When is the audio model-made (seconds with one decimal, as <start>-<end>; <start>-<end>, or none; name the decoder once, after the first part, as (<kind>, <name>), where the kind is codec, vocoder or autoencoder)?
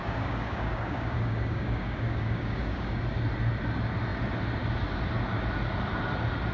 0.0-3.0 (codec, DAC)